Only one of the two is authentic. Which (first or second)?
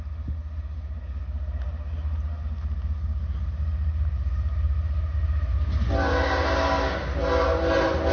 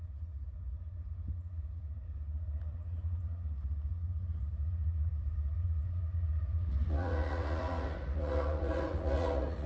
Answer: first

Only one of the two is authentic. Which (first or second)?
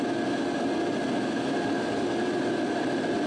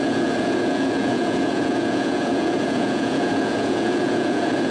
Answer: first